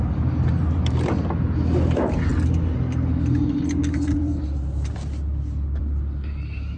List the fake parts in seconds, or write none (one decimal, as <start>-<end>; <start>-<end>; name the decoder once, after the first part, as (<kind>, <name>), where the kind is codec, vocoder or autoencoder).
none